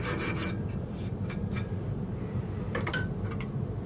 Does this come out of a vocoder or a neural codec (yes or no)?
yes